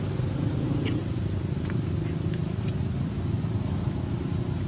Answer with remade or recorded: recorded